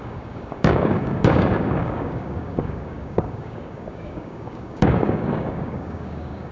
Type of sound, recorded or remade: remade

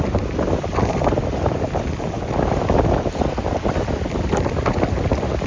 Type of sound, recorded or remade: recorded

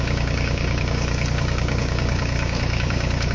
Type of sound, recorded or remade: remade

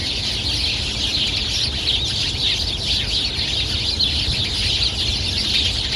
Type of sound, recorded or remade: recorded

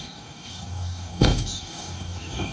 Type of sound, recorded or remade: remade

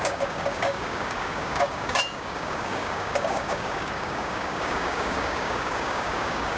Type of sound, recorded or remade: remade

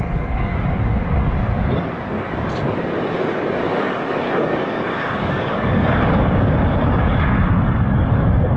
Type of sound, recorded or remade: remade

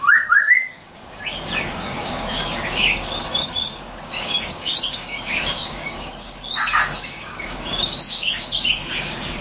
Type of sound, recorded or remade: remade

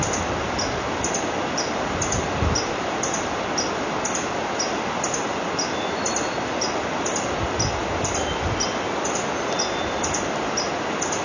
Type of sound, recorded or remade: recorded